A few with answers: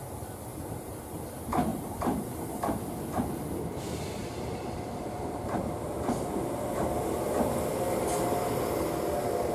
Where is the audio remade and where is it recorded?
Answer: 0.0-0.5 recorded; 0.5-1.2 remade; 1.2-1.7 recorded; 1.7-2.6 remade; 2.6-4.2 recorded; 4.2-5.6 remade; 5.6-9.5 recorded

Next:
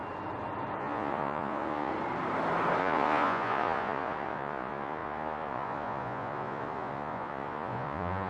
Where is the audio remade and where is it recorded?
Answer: 0.0-0.8 recorded; 0.8-1.9 remade; 1.9-2.8 recorded; 2.8-8.3 remade

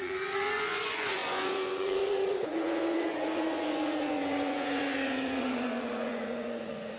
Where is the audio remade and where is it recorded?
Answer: 0.0-7.0 remade